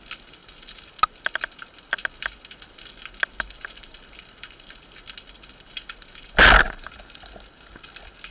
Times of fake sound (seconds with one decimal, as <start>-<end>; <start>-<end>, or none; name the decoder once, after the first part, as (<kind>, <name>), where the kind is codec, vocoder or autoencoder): none